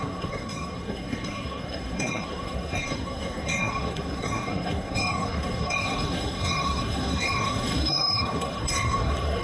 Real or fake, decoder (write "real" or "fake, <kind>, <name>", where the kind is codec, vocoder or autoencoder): fake, codec, SNAC